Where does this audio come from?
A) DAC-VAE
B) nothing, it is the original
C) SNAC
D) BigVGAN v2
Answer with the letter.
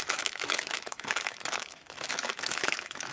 A